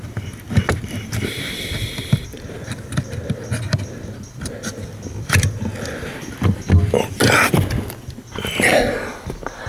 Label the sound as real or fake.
real